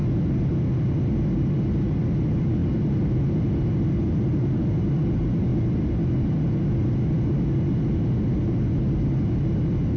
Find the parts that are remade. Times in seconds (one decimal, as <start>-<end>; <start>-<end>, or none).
none